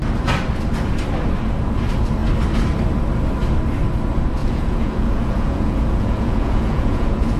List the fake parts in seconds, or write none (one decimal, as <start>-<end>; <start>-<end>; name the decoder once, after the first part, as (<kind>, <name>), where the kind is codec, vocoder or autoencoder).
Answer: 4.4-7.4 (vocoder, Vocos)